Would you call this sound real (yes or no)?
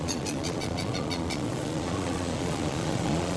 no